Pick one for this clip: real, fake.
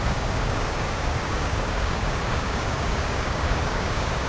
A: fake